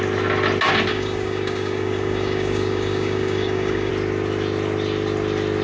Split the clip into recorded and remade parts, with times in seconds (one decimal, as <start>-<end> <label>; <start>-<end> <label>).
0.0-0.9 recorded; 0.9-3.9 remade; 3.9-5.6 recorded